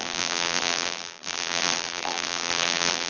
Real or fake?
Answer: fake